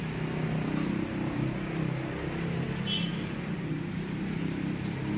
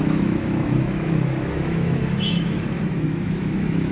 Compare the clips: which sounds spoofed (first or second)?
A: second